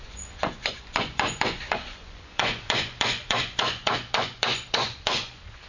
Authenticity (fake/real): fake